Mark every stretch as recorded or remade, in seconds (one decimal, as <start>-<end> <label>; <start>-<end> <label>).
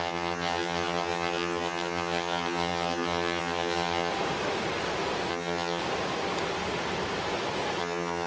0.0-4.1 remade; 4.1-5.3 recorded; 5.3-5.8 remade; 5.8-7.8 recorded; 7.8-8.3 remade